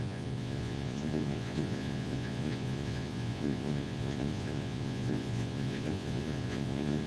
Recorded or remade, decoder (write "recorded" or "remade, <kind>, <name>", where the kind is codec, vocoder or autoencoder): remade, vocoder, Vocos